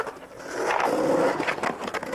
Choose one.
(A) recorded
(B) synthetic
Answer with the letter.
A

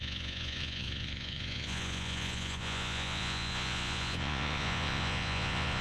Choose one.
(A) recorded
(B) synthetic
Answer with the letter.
B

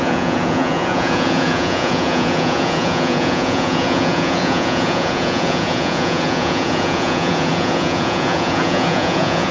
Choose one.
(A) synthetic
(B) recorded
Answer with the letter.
A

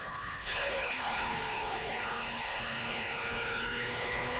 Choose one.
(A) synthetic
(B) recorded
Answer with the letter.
A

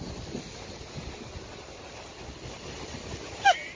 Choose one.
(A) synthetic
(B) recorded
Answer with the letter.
B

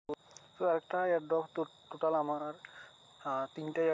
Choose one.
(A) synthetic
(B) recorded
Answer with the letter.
B